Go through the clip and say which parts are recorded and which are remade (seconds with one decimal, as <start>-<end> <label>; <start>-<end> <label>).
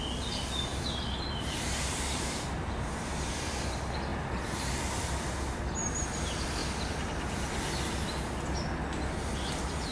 0.0-0.7 recorded; 0.7-3.6 remade; 3.6-4.1 recorded; 4.1-4.7 remade; 4.7-9.9 recorded